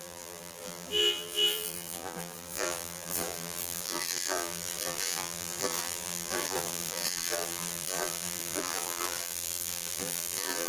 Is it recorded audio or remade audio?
remade